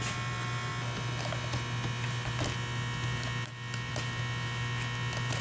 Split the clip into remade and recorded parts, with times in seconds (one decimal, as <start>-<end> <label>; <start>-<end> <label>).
0.0-5.4 recorded